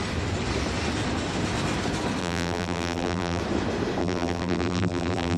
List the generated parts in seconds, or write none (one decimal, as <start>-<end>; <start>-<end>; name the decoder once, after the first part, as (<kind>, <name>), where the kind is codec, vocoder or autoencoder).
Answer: 2.2-3.4 (vocoder, BigVGAN v2); 4.0-5.4